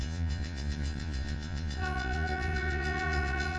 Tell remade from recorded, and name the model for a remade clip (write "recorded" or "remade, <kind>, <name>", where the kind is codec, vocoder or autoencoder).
remade, vocoder, Vocos